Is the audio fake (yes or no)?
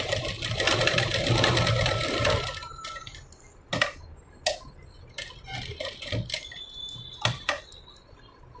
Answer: no